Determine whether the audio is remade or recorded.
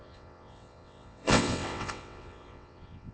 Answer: remade